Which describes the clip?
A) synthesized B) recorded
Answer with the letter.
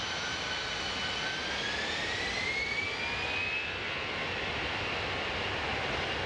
B